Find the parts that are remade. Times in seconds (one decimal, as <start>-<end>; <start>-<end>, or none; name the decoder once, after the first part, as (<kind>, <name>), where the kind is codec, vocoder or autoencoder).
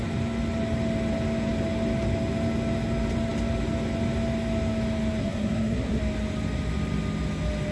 5.2-6.0 (codec, SNAC)